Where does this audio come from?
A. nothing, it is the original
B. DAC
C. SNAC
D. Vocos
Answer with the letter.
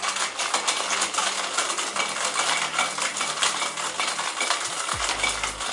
A